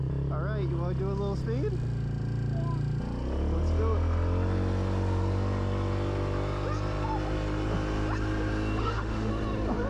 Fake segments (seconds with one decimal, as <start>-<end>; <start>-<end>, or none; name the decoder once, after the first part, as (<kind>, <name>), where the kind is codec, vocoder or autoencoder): 8.8-9.3 (autoencoder, DAC-VAE)